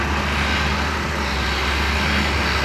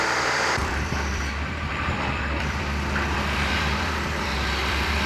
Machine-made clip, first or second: second